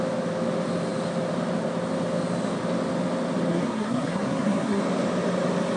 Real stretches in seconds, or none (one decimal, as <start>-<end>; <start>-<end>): 0.0-3.5; 4.8-5.8